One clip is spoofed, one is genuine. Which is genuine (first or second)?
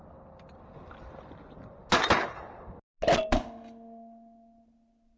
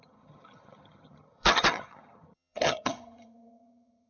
first